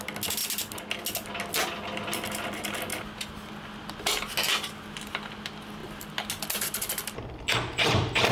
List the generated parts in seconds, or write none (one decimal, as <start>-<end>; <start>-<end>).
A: none

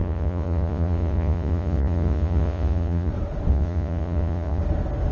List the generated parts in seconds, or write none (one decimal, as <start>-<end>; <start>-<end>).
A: 0.0-3.1; 3.5-4.6

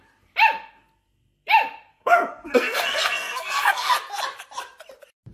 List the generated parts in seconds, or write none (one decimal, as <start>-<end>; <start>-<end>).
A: 1.9-3.9

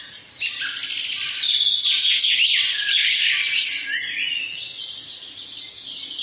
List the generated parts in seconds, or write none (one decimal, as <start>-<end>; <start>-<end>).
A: 2.7-3.3

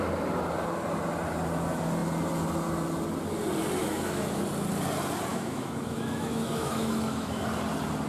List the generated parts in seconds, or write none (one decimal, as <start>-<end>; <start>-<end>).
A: 3.8-4.4; 5.3-7.4

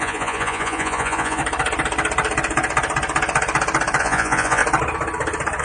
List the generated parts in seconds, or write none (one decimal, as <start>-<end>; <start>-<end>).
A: 0.0-1.4; 4.0-4.6

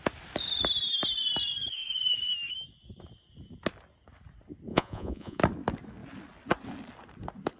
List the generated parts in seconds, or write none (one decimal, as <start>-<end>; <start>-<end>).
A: 4.7-5.4

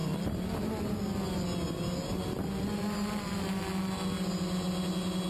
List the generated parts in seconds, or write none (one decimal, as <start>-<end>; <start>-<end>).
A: none